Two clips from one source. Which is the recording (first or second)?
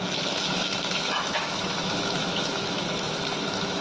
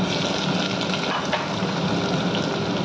second